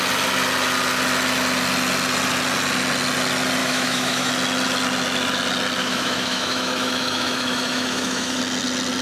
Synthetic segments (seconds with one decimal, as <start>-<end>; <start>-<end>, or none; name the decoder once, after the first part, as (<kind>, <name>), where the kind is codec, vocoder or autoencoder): 3.6-4.3 (autoencoder, DAC-VAE); 5.8-8.4